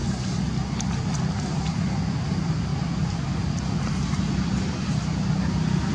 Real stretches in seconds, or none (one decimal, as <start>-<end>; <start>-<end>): 0.0-2.7